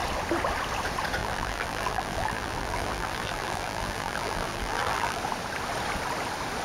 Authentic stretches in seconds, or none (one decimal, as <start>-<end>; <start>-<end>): 0.0-1.2; 5.2-6.6